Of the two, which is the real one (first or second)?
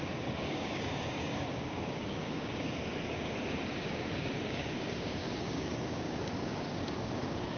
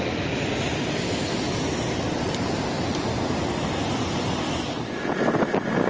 second